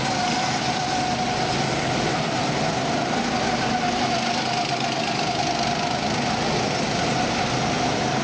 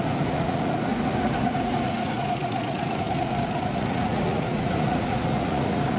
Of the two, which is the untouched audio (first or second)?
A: first